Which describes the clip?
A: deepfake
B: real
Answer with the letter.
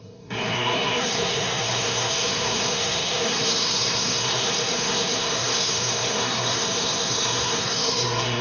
A